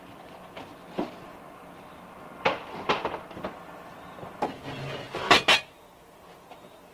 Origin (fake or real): real